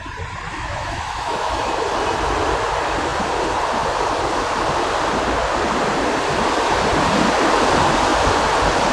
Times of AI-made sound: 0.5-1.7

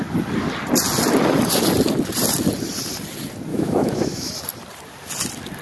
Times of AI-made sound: 3.5-4.3

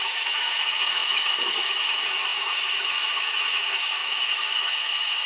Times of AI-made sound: 0.0-5.3

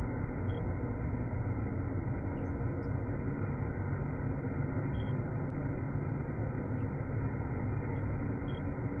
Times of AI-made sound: none